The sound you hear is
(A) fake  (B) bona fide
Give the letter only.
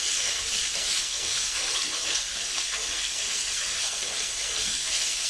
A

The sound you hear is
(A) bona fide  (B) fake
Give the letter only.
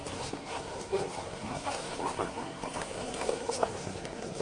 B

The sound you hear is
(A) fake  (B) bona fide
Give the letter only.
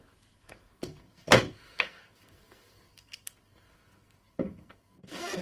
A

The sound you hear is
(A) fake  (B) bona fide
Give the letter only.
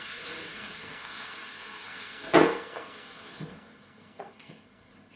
A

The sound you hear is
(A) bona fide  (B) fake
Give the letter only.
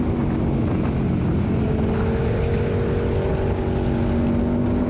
A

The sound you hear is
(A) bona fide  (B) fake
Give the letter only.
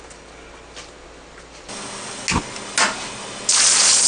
A